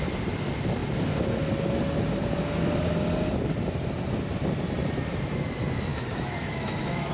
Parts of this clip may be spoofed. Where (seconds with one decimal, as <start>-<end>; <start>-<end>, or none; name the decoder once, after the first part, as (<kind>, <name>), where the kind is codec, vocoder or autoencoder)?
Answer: 5.9-7.1 (autoencoder, DAC-VAE)